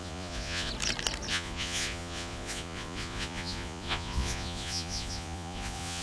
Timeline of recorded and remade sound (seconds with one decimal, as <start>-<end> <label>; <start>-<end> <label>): 0.0-0.7 remade; 0.7-1.3 recorded; 1.3-6.0 remade